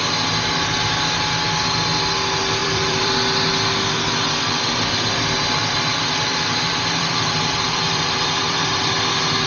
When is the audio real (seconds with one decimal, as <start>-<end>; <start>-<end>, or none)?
0.0-2.6; 3.1-6.3; 8.9-9.5